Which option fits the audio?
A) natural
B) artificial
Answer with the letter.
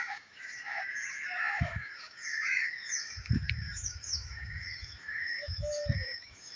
B